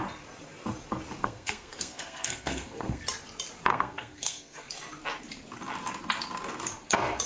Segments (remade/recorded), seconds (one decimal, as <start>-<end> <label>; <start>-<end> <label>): 0.0-1.2 recorded; 1.2-3.0 remade; 3.0-3.7 recorded; 3.7-4.7 remade; 4.7-7.3 recorded